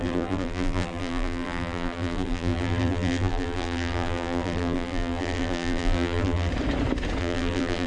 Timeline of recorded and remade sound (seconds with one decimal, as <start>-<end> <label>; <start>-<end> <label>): 0.0-6.5 remade; 6.5-7.2 recorded; 7.2-7.9 remade